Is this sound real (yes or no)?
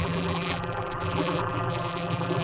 no